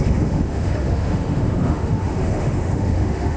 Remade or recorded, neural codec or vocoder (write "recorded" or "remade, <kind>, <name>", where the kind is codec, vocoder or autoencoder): remade, autoencoder, DAC-VAE